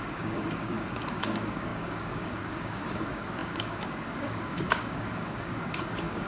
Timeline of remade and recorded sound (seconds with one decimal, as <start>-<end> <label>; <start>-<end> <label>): 0.0-6.3 remade